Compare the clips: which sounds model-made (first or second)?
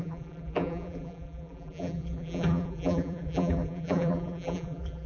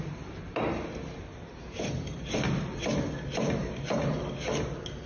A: first